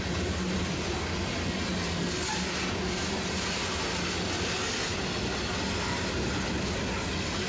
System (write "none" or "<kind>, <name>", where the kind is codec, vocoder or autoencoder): none